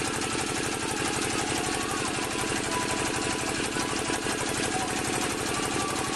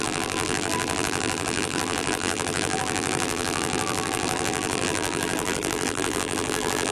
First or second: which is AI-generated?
second